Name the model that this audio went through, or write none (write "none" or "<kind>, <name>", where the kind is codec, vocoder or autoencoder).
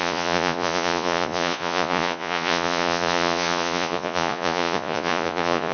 vocoder, Vocos